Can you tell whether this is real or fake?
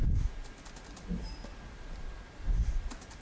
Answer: real